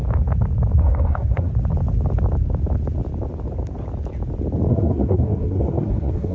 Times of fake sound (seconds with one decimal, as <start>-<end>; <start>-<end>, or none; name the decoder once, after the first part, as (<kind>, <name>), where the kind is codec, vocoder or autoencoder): 0.8-1.5 (codec, SNAC); 4.7-6.3